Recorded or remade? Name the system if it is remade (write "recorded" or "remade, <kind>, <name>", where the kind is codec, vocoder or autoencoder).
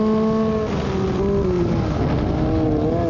recorded